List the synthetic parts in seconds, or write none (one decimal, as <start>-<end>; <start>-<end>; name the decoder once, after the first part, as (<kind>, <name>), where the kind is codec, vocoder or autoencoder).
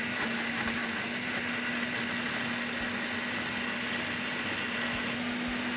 none